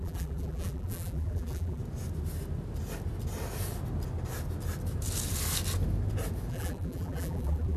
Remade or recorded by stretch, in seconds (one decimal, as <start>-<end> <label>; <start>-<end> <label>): 0.0-1.8 remade; 1.8-6.5 recorded; 6.5-7.8 remade